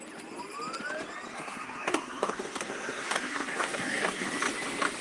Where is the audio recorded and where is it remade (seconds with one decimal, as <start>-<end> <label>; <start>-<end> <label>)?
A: 0.0-1.3 recorded; 1.3-4.3 remade; 4.3-5.0 recorded

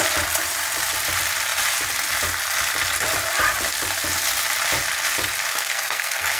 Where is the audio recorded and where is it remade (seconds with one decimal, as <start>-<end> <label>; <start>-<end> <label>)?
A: 0.0-5.5 recorded; 5.5-6.4 remade

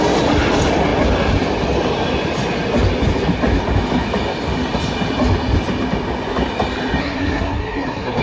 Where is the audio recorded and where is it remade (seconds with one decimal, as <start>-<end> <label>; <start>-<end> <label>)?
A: 0.0-7.0 recorded; 7.0-8.2 remade